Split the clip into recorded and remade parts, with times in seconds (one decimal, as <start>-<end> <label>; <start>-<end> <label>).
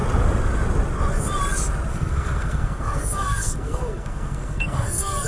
0.0-1.9 recorded; 1.9-5.3 remade